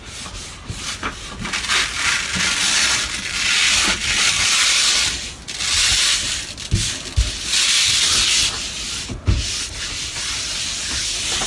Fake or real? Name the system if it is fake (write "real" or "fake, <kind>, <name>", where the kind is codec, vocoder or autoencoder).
real